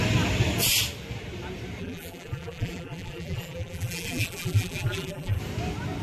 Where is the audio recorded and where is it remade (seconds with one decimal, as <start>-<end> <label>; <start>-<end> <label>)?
0.0-1.8 recorded; 1.8-5.4 remade; 5.4-6.0 recorded